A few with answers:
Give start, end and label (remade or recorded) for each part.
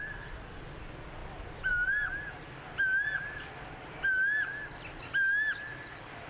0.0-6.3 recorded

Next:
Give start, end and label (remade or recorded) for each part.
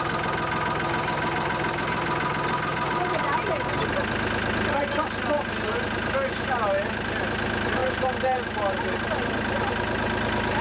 0.0-10.6 recorded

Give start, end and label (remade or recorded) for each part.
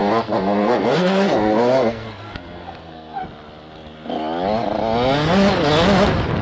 0.0-3.2 remade; 3.2-6.4 recorded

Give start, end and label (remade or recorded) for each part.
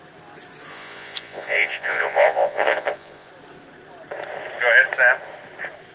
0.0-0.7 recorded; 0.7-3.3 remade; 3.3-5.9 recorded